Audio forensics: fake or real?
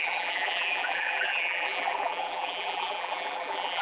fake